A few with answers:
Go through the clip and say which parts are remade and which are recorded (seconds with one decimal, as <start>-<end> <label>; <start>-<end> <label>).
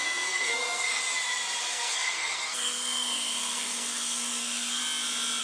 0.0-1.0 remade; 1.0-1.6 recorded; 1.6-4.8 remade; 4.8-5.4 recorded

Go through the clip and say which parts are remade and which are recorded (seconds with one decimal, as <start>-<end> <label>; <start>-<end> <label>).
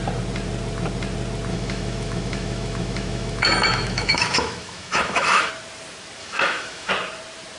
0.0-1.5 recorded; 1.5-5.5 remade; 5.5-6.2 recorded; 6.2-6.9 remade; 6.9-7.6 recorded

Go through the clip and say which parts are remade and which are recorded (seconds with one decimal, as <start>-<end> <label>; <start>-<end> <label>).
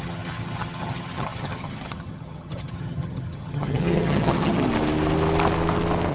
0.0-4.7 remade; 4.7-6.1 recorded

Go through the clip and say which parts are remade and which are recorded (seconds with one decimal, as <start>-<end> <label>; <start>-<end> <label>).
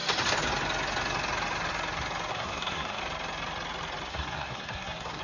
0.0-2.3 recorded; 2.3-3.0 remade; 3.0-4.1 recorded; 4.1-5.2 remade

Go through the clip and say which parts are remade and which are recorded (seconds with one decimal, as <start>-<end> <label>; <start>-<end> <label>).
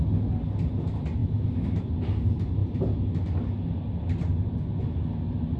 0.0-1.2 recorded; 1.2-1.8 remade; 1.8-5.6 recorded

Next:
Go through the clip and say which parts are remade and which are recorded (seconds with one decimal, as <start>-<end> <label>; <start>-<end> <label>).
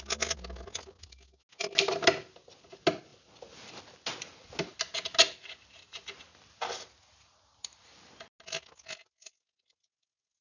0.0-10.4 recorded